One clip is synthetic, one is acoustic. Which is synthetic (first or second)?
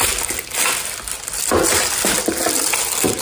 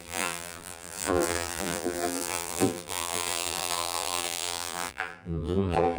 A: second